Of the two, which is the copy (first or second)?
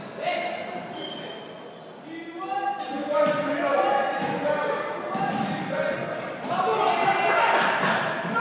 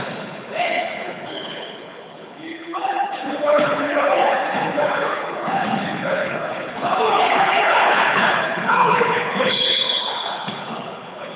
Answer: second